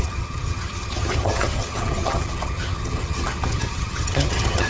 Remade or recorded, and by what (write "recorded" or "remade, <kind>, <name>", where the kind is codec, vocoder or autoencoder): remade, vocoder, HiFi-GAN